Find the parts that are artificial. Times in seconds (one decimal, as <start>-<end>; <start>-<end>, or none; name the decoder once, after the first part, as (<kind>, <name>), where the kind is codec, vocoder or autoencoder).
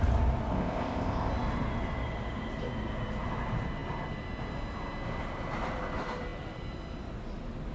0.5-1.3 (codec, ZipCodec)